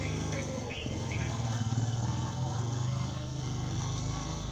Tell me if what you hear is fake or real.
fake